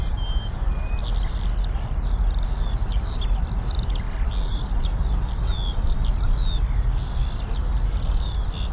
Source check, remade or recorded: recorded